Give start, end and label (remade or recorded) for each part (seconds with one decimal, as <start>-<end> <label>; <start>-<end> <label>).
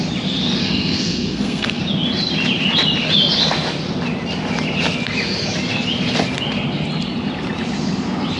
0.0-0.6 recorded; 0.6-1.8 remade; 1.8-8.4 recorded